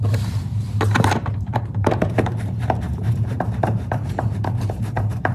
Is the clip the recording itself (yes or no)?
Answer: no